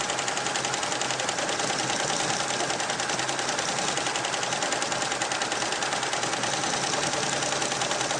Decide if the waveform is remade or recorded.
recorded